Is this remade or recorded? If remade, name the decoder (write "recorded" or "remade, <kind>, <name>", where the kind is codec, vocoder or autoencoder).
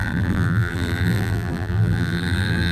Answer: remade, vocoder, BigVGAN v2